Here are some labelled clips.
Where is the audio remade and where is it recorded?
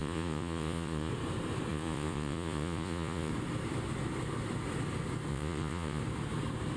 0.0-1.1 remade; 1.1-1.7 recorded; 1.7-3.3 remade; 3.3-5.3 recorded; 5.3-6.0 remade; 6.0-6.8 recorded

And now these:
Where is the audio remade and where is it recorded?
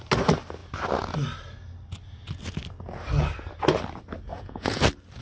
0.0-4.3 recorded; 4.3-4.8 remade; 4.8-5.2 recorded